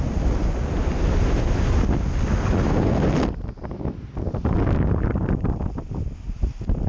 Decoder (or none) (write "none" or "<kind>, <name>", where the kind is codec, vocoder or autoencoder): none